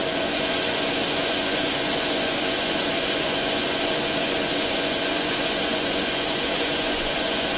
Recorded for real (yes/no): no